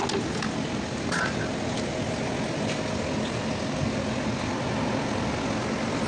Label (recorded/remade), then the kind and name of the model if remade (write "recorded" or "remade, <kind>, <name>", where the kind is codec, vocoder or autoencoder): recorded